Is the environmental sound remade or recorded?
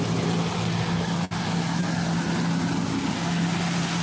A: recorded